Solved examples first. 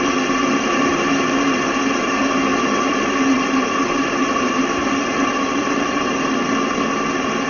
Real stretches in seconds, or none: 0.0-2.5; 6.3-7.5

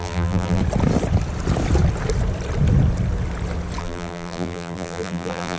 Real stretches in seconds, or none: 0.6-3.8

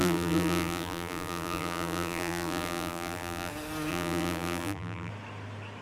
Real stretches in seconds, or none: 3.5-3.9; 5.1-5.8

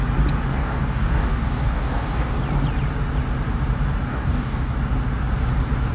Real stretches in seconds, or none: 0.0-0.5; 2.3-4.1; 4.7-5.9

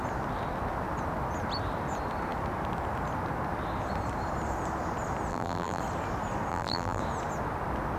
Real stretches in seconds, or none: 0.0-5.3; 5.8-6.5; 7.0-8.0

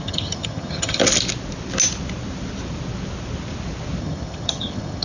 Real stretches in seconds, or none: 1.0-4.0

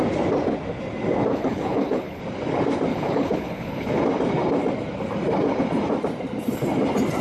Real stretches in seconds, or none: 0.0-1.3; 2.2-2.9; 4.0-7.2

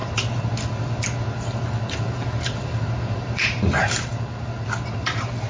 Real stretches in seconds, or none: 0.0-1.9; 4.1-5.5